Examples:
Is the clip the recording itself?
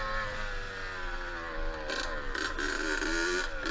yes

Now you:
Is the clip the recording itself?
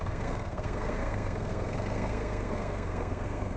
no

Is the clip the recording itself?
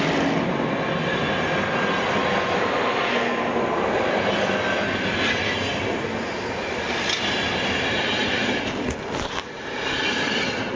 yes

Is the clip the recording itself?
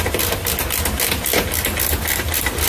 yes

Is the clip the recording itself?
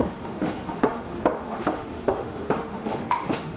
no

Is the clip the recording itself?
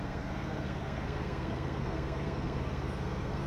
no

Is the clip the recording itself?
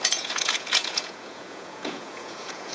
no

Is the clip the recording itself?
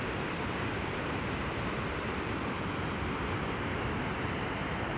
no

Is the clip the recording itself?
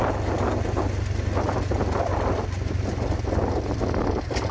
yes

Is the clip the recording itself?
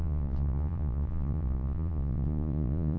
no